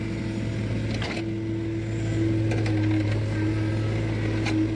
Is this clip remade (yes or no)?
no